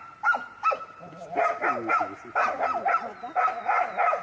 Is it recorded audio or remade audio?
recorded